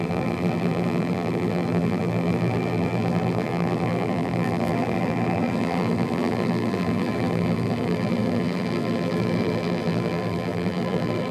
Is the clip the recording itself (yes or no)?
no